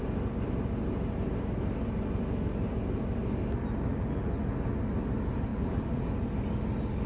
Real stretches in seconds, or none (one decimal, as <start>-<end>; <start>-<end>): 0.0-3.9; 4.4-5.5; 6.1-7.1